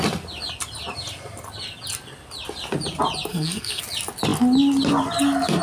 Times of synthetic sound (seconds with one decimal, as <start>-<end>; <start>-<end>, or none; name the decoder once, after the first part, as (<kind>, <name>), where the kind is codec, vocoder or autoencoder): 3.3-3.8 (codec, SNAC)

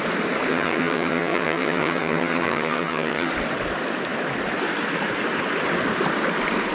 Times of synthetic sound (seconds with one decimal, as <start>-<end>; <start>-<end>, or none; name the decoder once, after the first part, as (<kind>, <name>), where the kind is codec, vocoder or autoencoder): 0.5-3.3 (vocoder, HiFi-GAN)

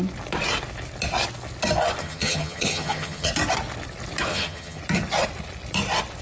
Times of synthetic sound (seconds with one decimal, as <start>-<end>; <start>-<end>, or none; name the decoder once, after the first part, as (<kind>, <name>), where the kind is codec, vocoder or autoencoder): 2.0-3.3 (vocoder, HiFi-GAN); 4.3-4.8

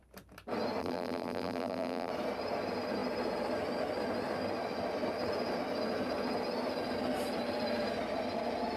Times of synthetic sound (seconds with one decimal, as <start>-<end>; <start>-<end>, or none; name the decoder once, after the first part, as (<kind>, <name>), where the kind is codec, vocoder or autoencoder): 0.8-2.1 (vocoder, BigVGAN v2)

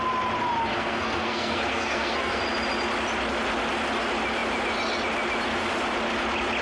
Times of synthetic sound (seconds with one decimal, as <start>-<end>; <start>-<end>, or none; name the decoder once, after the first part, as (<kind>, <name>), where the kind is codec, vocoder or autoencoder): 0.7-2.4 (codec, SNAC)